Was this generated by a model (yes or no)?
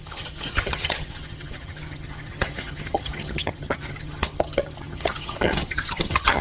yes